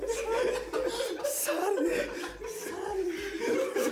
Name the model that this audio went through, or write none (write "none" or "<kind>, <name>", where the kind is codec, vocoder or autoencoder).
none